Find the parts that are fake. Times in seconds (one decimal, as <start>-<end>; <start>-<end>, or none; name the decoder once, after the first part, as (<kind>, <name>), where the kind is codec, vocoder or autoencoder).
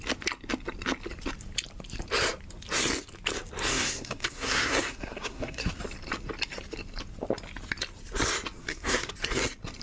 3.7-5.7 (codec, SNAC); 8.6-9.1